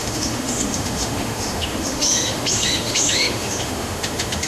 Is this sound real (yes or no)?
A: no